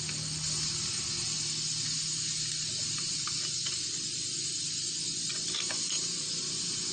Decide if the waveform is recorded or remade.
recorded